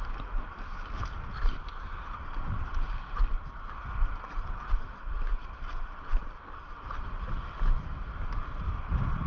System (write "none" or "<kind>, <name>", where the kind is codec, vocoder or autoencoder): none